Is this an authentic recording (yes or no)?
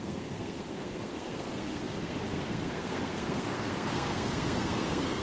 no